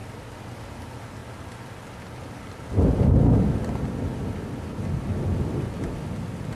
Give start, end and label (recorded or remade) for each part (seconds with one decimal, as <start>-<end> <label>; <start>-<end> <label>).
0.0-6.6 recorded